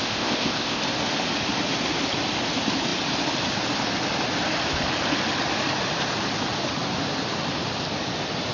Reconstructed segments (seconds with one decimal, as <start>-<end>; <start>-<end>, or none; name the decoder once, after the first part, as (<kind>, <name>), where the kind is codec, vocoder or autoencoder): 0.0-0.8 (codec, ZipCodec)